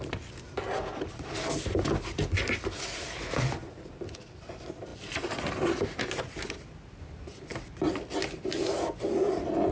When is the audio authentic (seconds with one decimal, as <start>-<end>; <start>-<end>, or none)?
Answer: 0.0-9.7